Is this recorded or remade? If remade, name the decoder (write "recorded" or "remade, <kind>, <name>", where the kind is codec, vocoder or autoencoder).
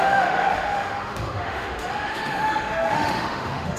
remade, autoencoder, DAC-VAE